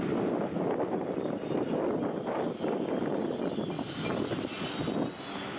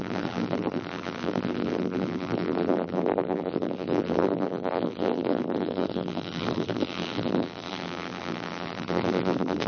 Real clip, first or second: first